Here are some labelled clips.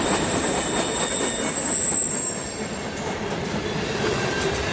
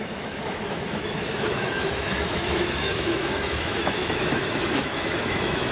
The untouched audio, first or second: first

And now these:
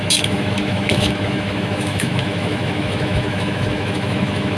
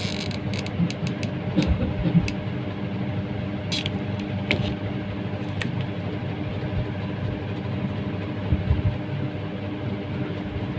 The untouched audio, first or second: second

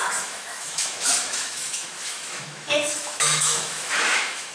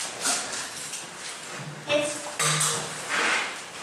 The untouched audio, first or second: second